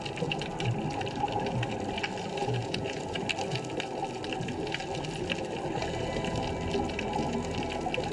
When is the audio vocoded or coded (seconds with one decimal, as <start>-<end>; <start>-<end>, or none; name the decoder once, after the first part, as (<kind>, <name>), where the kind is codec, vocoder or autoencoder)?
2.4-3.2 (vocoder, Vocos)